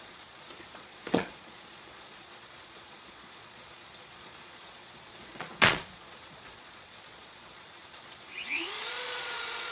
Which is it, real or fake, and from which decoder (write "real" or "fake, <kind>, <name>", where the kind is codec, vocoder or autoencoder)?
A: fake, vocoder, Vocos